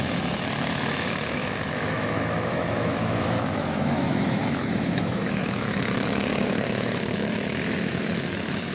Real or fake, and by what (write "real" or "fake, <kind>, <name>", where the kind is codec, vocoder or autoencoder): fake, autoencoder, DAC-VAE